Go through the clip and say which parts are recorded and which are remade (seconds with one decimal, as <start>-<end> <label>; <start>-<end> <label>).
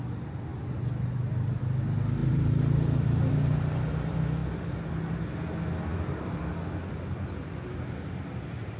0.0-2.2 recorded; 2.2-3.5 remade; 3.5-4.4 recorded; 4.4-4.9 remade; 4.9-5.9 recorded; 5.9-6.4 remade; 6.4-8.8 recorded